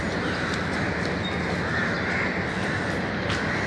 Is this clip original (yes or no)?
yes